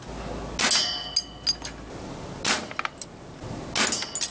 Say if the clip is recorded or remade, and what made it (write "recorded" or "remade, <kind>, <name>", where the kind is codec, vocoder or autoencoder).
recorded